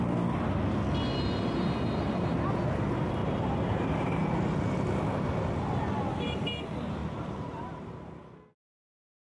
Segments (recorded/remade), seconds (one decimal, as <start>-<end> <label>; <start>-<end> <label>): 0.0-3.2 recorded; 3.2-5.0 remade; 5.0-7.0 recorded; 7.0-8.1 remade; 8.1-9.3 recorded